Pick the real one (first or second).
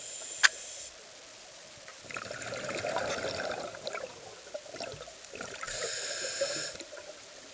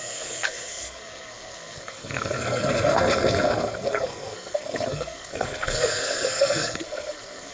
first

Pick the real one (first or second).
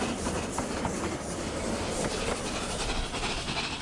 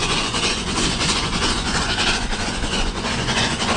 first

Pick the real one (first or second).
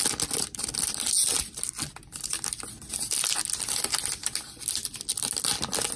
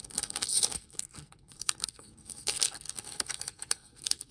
first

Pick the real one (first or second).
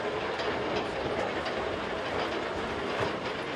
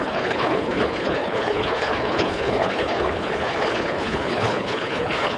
first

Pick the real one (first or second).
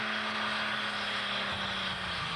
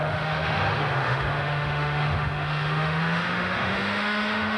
first